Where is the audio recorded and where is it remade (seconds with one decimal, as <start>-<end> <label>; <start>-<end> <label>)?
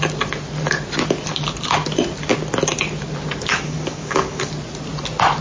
0.0-3.5 recorded; 3.5-4.5 remade; 4.5-5.4 recorded